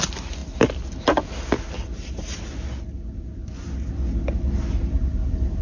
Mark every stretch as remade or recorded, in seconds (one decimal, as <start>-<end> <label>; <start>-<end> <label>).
0.0-5.6 recorded